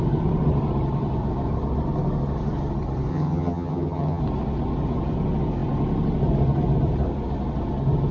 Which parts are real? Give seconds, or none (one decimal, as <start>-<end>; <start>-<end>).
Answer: 0.0-3.1; 4.2-8.1